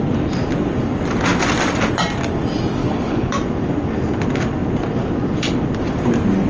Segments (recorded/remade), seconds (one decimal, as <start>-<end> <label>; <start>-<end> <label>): 0.0-2.8 recorded; 2.8-3.3 remade; 3.3-6.5 recorded